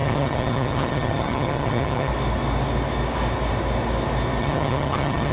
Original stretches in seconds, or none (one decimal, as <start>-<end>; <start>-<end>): 2.1-4.4